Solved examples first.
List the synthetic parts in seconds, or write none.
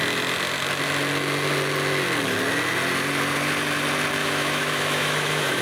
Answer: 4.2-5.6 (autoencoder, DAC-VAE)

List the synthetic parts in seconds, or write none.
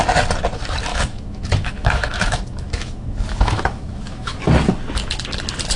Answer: 0.9-4.4 (autoencoder, DAC-VAE)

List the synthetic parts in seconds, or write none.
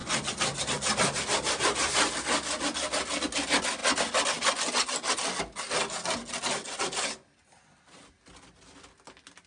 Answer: 0.0-0.6 (vocoder, BigVGAN v2)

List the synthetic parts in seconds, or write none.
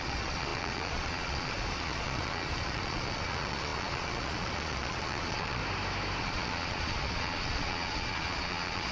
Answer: 0.0-5.6 (vocoder, Vocos); 6.2-8.9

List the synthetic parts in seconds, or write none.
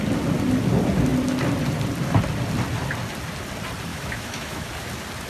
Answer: 3.9-4.7 (autoencoder, DAC-VAE)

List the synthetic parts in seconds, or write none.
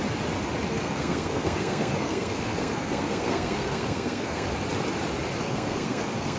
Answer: 0.7-4.5 (codec, SNAC); 5.4-6.4